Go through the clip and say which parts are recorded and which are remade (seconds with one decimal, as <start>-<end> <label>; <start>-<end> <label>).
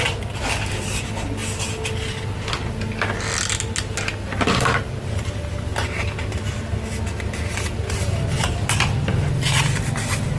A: 0.0-10.4 recorded